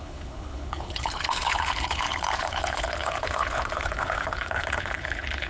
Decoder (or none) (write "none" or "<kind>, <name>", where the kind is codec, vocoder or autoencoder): codec, HILCodec